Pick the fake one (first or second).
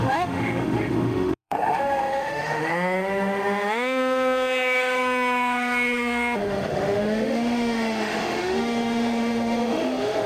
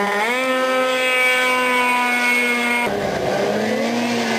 first